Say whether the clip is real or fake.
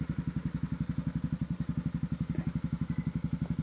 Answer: real